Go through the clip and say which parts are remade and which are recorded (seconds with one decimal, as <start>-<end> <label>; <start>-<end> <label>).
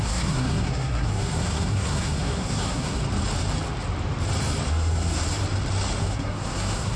0.0-3.0 remade; 3.0-4.7 recorded; 4.7-5.2 remade; 5.2-6.0 recorded; 6.0-7.0 remade